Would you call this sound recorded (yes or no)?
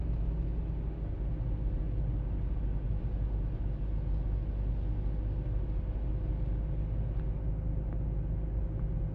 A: yes